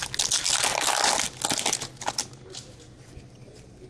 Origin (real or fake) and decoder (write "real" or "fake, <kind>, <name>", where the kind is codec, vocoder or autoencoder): real